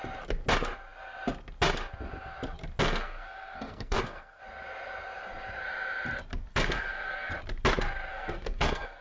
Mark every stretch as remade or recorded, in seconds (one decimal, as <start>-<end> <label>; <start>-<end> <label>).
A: 0.0-2.8 recorded; 2.8-4.4 remade; 4.4-6.5 recorded; 6.5-7.3 remade; 7.3-8.1 recorded; 8.1-9.0 remade